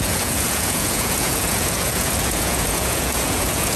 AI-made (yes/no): yes